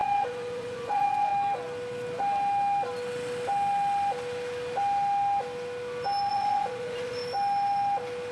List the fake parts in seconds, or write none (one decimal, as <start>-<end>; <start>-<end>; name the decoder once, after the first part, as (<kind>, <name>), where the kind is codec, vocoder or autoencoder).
0.0-1.3 (vocoder, Vocos); 6.3-7.2